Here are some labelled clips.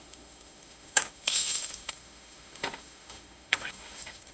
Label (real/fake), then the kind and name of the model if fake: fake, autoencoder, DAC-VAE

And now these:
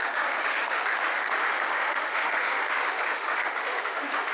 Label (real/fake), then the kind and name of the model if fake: fake, autoencoder, DAC-VAE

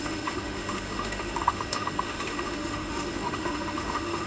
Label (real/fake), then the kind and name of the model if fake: fake, autoencoder, DAC-VAE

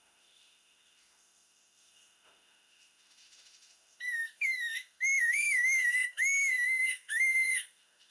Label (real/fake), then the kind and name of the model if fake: fake, autoencoder, DAC-VAE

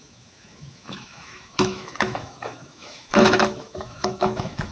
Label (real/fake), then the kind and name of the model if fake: fake, autoencoder, DAC-VAE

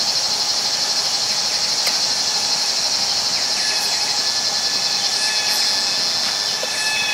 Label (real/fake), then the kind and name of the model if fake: real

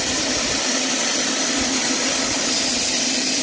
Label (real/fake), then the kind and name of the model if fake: real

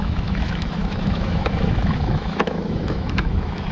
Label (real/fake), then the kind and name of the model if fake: fake, autoencoder, DAC-VAE